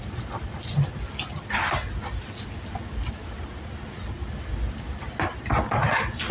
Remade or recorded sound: recorded